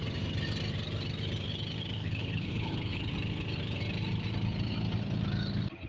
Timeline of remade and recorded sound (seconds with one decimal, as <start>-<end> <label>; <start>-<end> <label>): 0.0-2.0 recorded; 2.0-3.1 remade; 3.1-5.9 recorded